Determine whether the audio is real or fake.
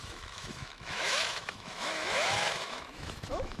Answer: fake